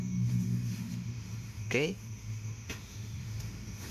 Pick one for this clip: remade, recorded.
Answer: remade